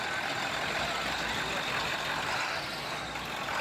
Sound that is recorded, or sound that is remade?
recorded